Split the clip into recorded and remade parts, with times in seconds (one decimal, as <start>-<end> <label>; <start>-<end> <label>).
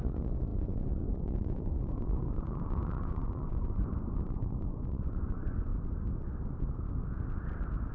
0.0-5.7 remade; 5.7-7.9 recorded